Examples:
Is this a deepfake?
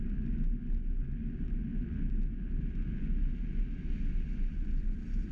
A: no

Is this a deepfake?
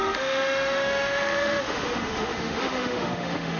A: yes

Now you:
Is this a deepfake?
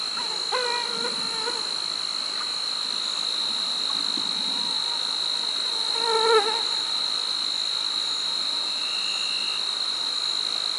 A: no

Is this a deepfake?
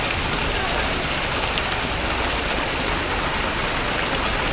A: no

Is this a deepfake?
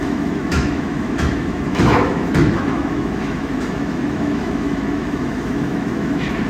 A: yes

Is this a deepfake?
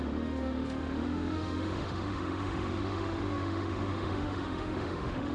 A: yes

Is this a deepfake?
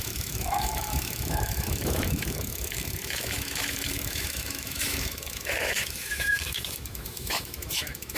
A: yes